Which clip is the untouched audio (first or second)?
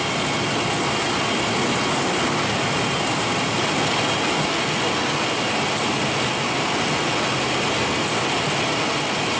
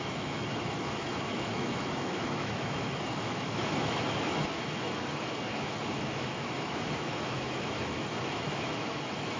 first